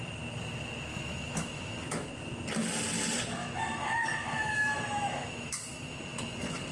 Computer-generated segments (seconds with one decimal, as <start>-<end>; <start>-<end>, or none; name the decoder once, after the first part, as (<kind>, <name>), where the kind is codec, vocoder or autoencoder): 0.9-2.1 (autoencoder, DAC-VAE); 3.4-6.7